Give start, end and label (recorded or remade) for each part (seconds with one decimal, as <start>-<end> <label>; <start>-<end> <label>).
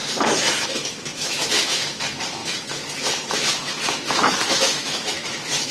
0.0-0.5 recorded; 0.5-5.7 remade